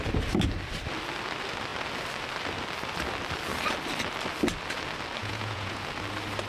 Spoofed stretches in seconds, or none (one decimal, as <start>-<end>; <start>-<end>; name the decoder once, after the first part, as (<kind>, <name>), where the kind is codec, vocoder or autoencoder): 5.2-5.8 (vocoder, Vocos)

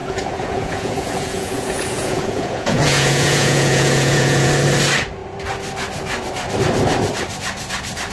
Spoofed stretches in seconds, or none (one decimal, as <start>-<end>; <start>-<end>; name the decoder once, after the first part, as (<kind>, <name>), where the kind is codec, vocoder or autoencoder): 0.0-4.5 (vocoder, Vocos)

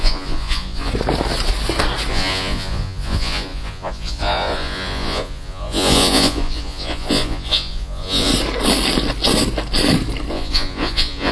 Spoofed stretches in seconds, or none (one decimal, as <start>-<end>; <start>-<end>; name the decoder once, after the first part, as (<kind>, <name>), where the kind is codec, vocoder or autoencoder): 0.0-0.9 (vocoder, Vocos); 2.1-8.3; 10.3-11.3

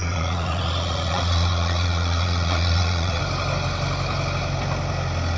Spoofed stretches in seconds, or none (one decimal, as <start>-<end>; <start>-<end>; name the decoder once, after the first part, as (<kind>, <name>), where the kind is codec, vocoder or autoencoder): 0.0-3.2 (vocoder, Vocos)

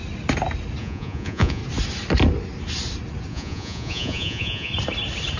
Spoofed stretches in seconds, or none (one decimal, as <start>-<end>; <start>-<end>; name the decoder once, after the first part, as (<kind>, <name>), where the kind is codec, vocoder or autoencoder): 0.8-1.6 (vocoder, Vocos); 3.3-4.7

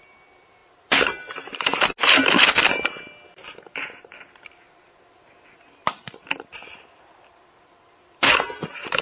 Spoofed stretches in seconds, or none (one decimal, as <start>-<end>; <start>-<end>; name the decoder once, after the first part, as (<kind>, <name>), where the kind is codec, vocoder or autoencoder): none

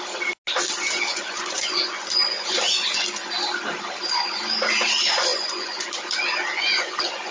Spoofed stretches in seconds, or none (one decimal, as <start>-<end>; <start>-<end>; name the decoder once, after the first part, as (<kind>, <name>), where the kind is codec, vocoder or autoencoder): 1.1-3.3 (vocoder, Vocos); 5.3-5.9; 6.5-7.3